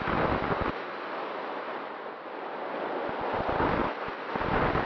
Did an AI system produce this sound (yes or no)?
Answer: no